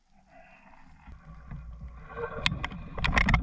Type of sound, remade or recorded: recorded